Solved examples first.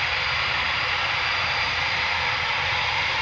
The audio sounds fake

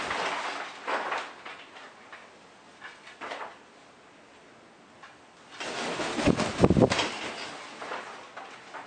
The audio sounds real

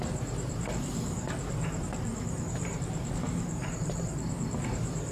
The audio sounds fake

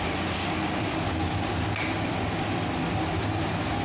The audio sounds fake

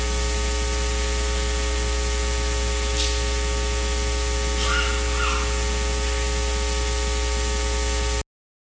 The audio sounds real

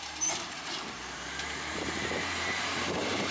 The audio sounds fake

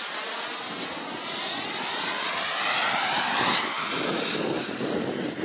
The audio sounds real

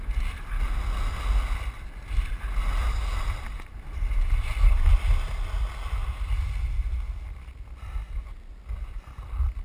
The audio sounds real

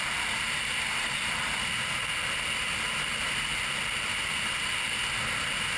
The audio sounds real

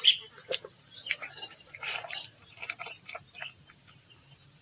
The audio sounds fake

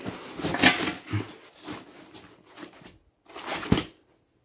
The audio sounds real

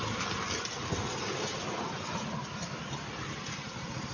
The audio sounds real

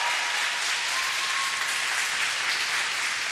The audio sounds real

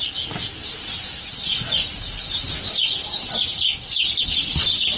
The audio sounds real